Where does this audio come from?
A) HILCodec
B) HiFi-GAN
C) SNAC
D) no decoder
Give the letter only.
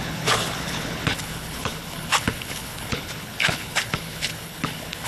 A